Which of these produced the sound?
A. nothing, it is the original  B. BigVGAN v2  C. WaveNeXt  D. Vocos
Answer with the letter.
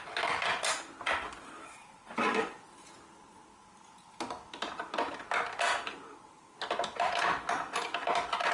A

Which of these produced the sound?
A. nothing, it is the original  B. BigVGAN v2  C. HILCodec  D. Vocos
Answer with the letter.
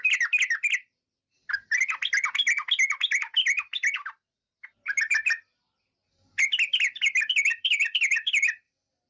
B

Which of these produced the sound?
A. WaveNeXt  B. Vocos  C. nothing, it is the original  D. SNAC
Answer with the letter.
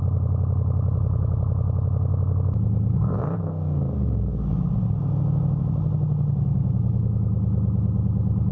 C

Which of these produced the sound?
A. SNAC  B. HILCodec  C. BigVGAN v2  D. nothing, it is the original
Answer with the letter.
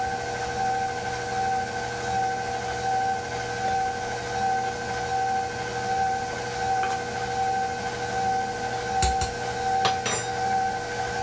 D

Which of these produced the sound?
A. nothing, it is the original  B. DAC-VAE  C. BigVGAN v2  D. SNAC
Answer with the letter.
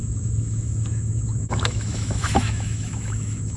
B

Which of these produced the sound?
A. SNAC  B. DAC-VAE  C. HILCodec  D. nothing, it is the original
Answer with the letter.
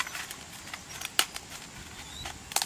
D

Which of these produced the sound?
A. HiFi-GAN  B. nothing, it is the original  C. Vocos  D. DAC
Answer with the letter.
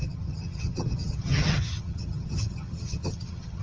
A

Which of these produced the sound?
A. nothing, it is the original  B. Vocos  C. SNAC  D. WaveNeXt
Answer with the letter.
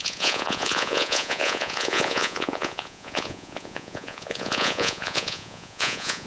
B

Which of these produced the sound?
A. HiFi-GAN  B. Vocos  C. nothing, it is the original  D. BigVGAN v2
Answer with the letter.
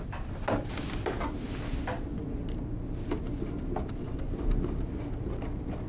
C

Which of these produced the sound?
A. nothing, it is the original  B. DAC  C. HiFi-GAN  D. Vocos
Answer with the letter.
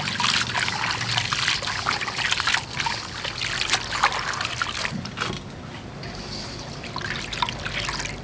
A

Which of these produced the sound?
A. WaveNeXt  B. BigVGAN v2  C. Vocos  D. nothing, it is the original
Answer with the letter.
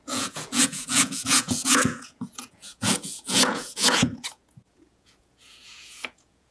C